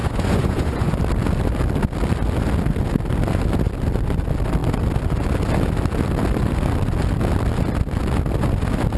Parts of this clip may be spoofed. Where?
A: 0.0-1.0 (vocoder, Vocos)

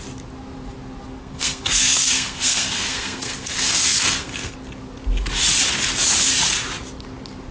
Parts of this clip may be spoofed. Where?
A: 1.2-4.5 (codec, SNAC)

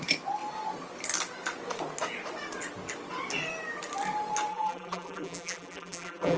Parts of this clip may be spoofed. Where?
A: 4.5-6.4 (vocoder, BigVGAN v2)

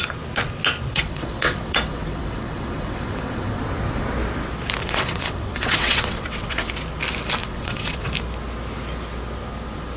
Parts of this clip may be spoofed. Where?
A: 0.9-3.6 (vocoder, WaveNeXt); 4.8-6.7; 7.4-8.1

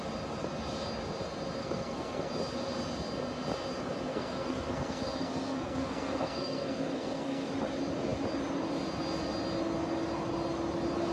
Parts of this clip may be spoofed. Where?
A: 1.6-2.3 (codec, SNAC); 4.1-7.5